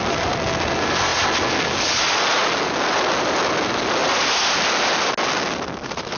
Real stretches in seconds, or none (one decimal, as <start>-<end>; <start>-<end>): 0.0-6.2